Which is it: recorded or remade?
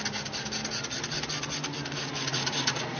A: recorded